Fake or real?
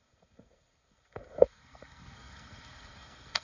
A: fake